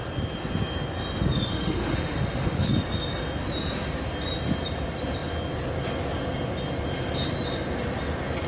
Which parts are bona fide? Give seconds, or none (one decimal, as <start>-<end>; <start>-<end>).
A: 0.0-1.5; 2.7-8.5